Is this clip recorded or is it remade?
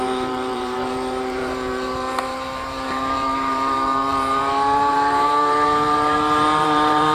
remade